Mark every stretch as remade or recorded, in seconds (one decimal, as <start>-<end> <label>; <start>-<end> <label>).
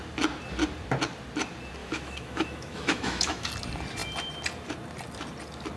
0.0-1.8 recorded; 1.8-3.5 remade; 3.5-5.8 recorded